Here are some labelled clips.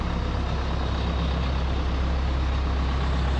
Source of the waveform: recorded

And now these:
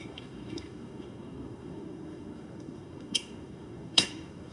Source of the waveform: remade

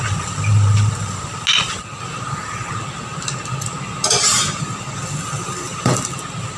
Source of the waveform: recorded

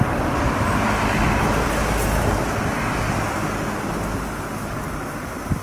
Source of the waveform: recorded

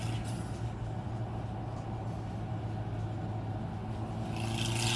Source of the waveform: recorded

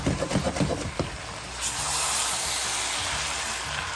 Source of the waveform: recorded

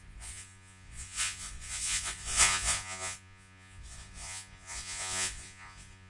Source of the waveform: remade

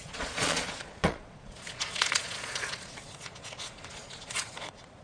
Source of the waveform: remade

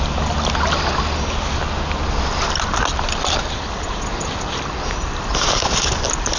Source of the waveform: recorded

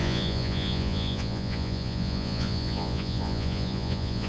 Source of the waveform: remade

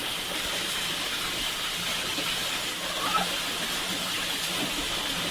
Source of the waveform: recorded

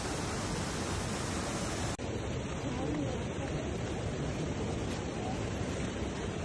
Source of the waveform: recorded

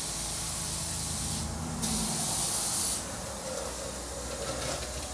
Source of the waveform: recorded